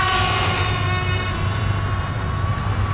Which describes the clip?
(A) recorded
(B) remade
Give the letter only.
B